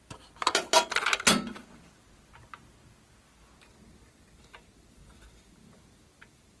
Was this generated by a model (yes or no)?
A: no